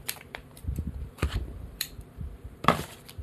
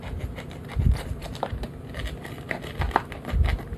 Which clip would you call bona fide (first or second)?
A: second